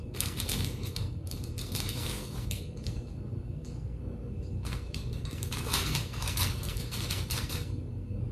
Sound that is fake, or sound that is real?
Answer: fake